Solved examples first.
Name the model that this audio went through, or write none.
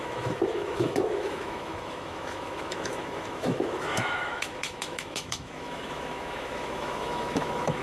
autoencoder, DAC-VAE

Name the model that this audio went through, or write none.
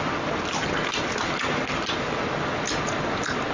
none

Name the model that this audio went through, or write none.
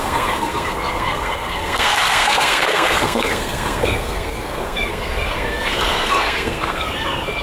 codec, SNAC